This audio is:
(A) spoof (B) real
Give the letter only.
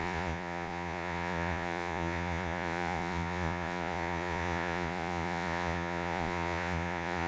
A